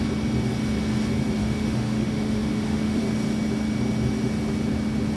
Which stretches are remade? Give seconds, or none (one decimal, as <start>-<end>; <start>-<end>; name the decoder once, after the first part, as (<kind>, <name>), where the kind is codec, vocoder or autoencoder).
1.4-3.0 (autoencoder, DAC-VAE)